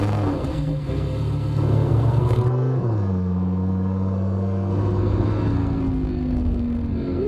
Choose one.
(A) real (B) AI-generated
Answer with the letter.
B